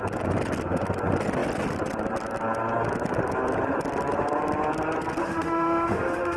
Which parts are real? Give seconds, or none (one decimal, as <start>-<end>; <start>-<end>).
0.0-5.2